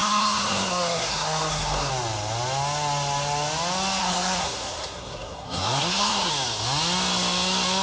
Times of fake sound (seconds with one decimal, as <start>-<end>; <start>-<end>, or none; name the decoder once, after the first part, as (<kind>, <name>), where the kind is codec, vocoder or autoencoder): 0.0-1.9 (codec, SNAC); 4.0-6.3